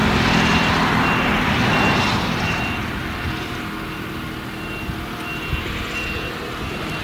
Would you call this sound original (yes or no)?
yes